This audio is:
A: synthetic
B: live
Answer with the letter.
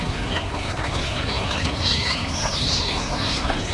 A